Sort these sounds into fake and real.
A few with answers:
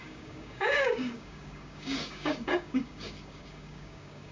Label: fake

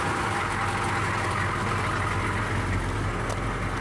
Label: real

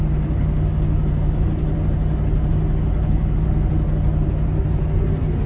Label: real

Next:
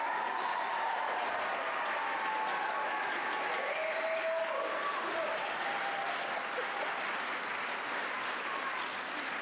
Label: real